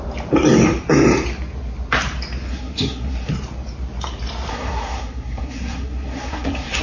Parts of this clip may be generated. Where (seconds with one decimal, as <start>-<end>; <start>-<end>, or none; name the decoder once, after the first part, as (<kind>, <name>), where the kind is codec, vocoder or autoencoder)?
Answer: 2.5-3.3 (codec, SNAC); 4.5-6.8